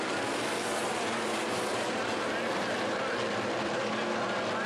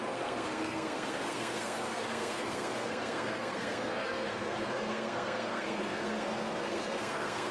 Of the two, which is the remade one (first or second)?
second